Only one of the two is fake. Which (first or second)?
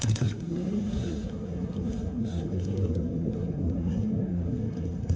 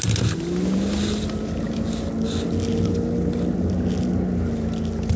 first